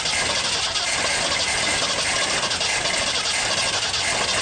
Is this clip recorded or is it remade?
recorded